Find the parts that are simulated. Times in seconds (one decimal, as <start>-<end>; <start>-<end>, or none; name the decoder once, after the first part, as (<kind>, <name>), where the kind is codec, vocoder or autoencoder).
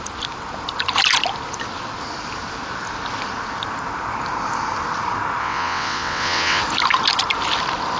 5.4-6.6 (vocoder, WaveNeXt)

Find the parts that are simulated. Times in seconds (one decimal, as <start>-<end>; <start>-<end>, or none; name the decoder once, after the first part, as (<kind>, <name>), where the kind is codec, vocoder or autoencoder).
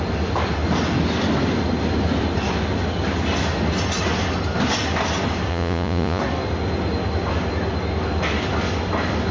5.5-6.2 (vocoder, Vocos)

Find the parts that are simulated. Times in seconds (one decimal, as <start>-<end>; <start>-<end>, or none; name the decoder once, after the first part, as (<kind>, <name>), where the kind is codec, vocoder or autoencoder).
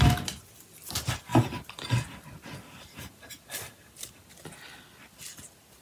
none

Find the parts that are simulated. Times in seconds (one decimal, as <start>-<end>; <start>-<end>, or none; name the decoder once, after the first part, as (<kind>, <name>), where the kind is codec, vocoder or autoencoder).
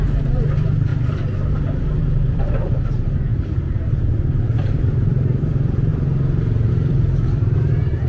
0.0-0.9 (vocoder, BigVGAN v2); 2.0-5.9; 6.7-8.1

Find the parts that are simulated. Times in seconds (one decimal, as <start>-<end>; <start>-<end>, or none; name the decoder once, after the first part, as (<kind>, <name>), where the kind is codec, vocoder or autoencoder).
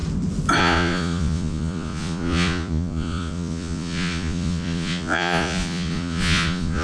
0.6-6.8 (vocoder, Vocos)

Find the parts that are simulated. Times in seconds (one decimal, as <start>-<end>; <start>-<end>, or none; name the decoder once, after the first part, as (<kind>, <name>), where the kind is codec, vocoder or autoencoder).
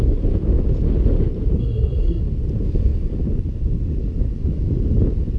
1.6-2.2 (codec, SNAC)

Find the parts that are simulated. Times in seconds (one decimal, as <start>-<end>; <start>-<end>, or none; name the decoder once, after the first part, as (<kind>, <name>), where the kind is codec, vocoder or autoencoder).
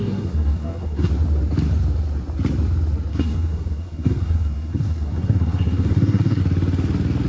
0.0-1.1 (codec, SNAC); 3.1-6.4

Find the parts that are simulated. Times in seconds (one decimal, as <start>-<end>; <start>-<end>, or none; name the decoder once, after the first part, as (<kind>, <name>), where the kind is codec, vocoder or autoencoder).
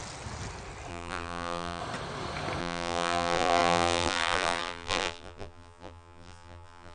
0.9-1.8 (vocoder, BigVGAN v2); 2.6-6.9